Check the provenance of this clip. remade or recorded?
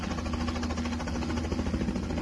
recorded